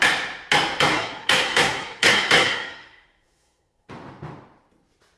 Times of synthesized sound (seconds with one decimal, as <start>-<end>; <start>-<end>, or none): 0.9-3.9